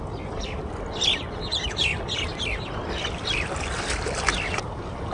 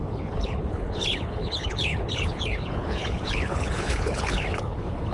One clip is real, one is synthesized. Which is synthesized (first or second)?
second